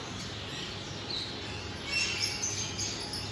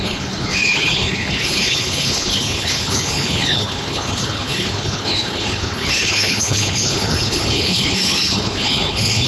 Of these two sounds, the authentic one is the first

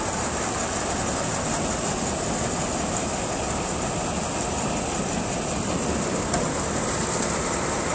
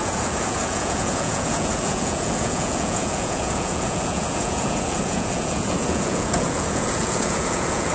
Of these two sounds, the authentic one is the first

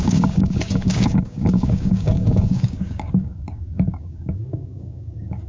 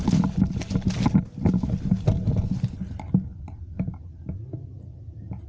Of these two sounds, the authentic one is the second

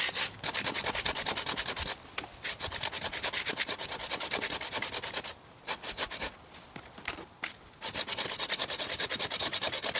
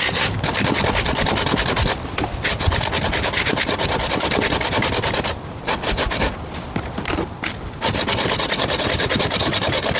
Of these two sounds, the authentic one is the first